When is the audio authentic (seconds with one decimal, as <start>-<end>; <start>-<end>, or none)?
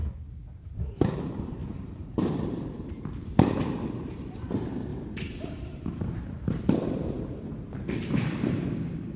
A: 0.0-1.2